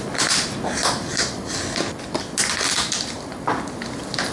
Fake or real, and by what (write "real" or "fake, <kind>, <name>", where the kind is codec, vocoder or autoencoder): real